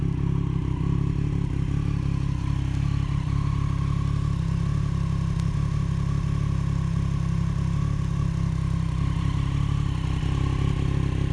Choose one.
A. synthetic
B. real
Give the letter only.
B